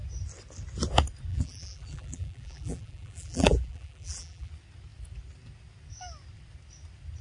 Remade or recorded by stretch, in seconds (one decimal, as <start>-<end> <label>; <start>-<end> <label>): 0.0-1.3 recorded; 1.3-4.5 remade; 4.5-7.2 recorded